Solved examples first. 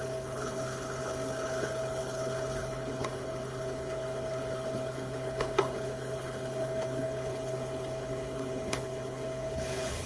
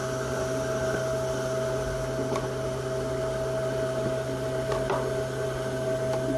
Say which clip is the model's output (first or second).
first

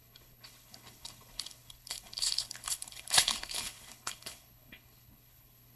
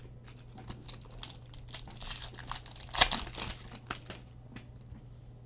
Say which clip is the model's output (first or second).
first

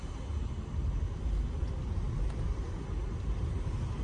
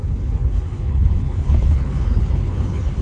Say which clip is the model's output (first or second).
second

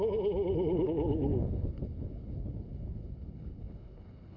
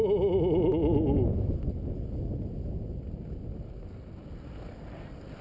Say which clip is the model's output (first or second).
first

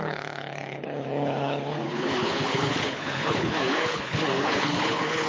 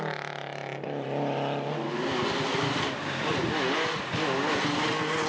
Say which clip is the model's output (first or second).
first